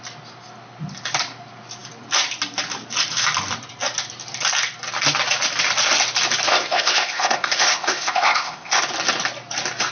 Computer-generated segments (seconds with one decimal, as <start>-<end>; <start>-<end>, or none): 6.5-8.8